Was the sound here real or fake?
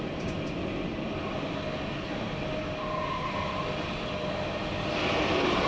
real